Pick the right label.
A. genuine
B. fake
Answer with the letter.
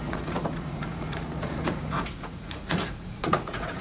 B